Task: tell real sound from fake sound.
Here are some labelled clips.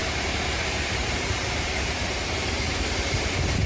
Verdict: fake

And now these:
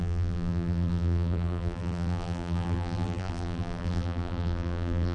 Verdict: fake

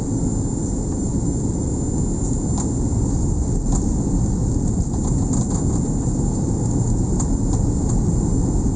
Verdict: real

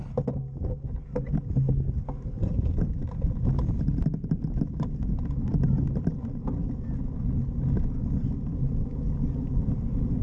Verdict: real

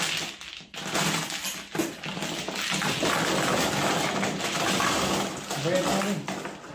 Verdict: real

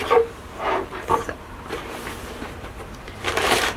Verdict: fake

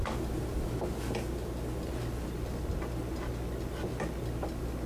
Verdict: real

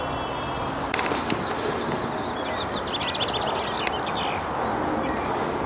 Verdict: real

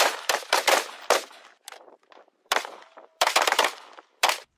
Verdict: fake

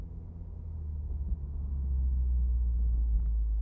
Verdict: real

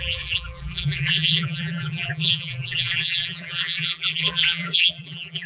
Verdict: fake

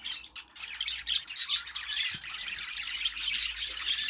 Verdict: fake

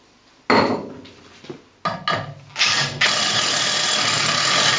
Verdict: real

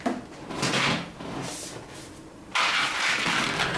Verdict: real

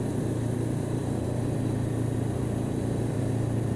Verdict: fake